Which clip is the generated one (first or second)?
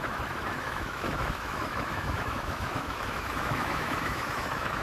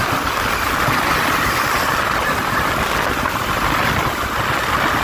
first